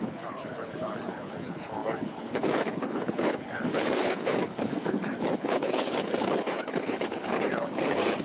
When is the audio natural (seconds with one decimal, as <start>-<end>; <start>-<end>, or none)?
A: none

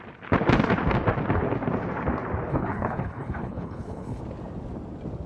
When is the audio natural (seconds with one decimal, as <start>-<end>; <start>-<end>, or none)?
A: 0.0-2.5; 4.2-5.3

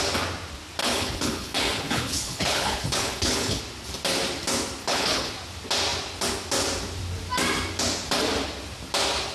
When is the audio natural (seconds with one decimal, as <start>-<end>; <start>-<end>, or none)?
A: 0.0-0.8; 3.6-4.8; 5.3-9.3

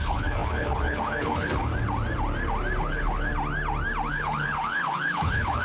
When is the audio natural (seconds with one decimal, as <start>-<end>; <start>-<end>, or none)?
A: 1.7-2.8; 3.3-4.1

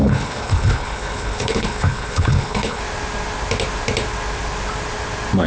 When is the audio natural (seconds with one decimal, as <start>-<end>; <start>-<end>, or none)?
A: 2.8-5.5